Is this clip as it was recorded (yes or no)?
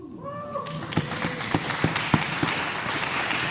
yes